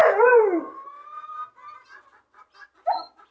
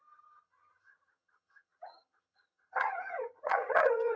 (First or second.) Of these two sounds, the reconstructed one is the second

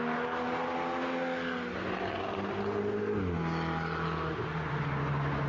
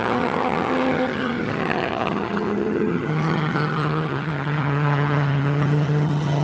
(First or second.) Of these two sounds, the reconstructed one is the second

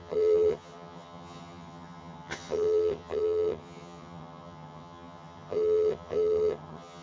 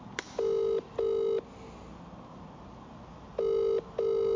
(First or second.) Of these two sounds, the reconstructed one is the first